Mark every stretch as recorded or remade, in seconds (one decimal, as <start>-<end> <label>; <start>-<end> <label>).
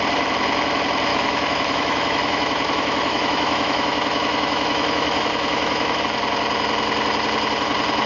0.0-1.1 recorded; 1.1-6.0 remade; 6.0-8.1 recorded